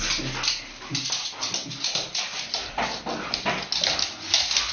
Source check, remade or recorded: recorded